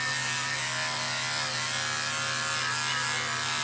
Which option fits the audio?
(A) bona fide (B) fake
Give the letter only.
A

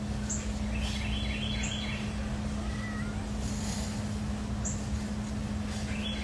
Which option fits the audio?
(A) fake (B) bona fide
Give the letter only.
B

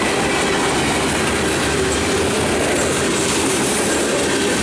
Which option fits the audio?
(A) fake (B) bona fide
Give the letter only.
B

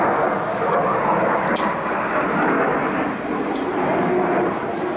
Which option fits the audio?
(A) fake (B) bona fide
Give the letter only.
B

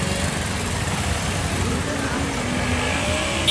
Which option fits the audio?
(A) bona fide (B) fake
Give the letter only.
A